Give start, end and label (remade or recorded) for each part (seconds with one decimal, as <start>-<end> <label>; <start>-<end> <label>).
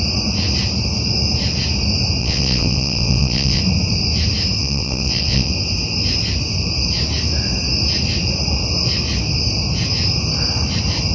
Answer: 0.0-2.2 recorded; 2.2-3.6 remade; 3.6-4.6 recorded; 4.6-5.5 remade; 5.5-11.1 recorded